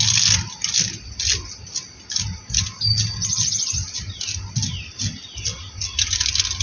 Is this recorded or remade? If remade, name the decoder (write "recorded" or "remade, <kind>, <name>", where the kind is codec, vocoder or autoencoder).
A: recorded